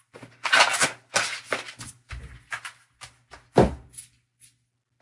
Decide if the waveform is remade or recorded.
recorded